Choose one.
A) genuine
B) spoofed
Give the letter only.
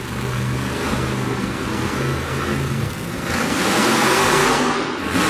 B